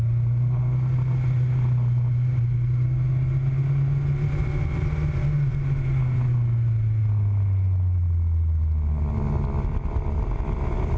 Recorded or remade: recorded